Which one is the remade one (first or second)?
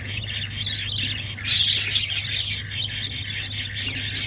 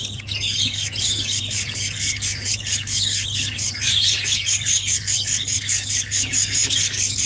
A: second